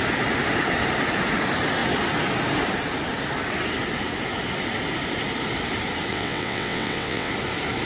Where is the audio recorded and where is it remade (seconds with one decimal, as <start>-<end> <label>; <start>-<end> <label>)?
0.0-6.1 recorded; 6.1-7.3 remade; 7.3-7.9 recorded